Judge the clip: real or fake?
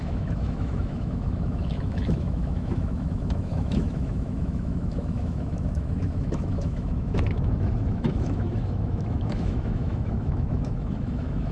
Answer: fake